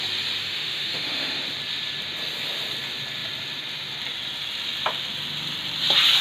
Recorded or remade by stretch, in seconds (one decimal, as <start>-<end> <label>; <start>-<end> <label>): 0.0-0.4 recorded; 0.4-1.4 remade; 1.4-6.2 recorded